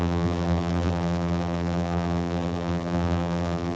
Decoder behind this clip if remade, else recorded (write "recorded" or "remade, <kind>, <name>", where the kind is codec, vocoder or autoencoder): remade, vocoder, BigVGAN v2